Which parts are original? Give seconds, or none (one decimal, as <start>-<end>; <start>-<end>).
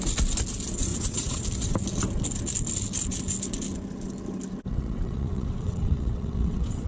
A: 0.0-0.9; 1.4-4.7